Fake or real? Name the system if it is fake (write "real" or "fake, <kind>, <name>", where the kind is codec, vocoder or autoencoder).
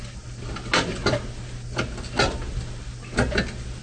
real